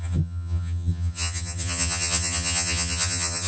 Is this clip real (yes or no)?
no